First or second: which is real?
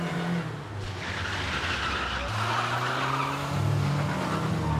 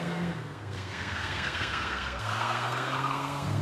first